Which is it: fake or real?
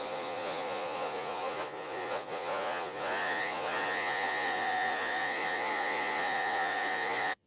fake